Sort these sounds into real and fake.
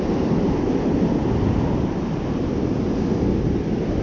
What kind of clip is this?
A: real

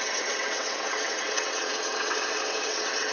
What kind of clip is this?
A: fake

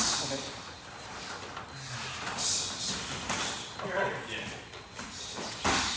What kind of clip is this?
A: real